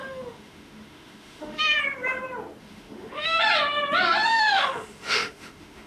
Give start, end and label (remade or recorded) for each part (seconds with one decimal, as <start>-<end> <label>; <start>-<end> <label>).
0.0-1.8 remade; 1.8-2.6 recorded; 2.6-3.4 remade; 3.4-4.3 recorded; 4.3-5.9 remade